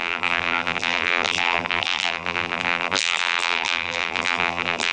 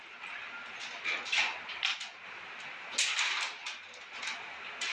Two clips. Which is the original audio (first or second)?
second